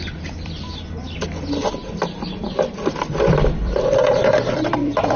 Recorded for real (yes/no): no